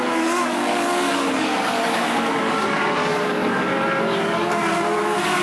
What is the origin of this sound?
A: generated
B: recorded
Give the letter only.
A